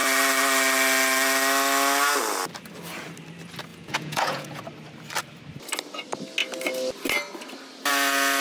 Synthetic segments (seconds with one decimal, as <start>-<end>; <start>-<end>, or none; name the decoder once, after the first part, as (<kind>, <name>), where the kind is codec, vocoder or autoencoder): 3.7-4.6 (vocoder, Vocos)